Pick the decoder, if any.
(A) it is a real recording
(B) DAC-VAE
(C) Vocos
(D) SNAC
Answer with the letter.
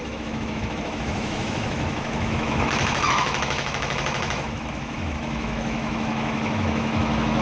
B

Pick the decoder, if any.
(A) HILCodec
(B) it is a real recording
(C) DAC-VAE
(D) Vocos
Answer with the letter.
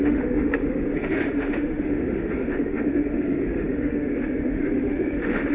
C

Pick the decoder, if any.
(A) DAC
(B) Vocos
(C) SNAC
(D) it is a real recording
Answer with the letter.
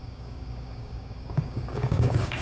A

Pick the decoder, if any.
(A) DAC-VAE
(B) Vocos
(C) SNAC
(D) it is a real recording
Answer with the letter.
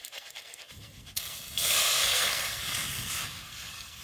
C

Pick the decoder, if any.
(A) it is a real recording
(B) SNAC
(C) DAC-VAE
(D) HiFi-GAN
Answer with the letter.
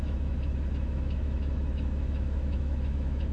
C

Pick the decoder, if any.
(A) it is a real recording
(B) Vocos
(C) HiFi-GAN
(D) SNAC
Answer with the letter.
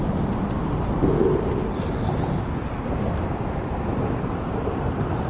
A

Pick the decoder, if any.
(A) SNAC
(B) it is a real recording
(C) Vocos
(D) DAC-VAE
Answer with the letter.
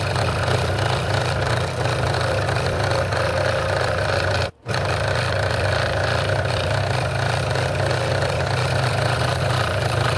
B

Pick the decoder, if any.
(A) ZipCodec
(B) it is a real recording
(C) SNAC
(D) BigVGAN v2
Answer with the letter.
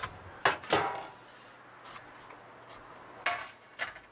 B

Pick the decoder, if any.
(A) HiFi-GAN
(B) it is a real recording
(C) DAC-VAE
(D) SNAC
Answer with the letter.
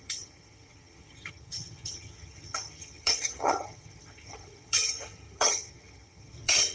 A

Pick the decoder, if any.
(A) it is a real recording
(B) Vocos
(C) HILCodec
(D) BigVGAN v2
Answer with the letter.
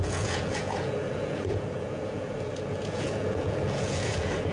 B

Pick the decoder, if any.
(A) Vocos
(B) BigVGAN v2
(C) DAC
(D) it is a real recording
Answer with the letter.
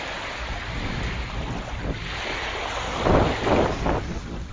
D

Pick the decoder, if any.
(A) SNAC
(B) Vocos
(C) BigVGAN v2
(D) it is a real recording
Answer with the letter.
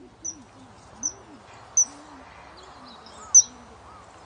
D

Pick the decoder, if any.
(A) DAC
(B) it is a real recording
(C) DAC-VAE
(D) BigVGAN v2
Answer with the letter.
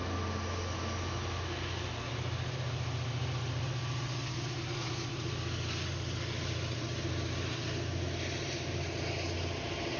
B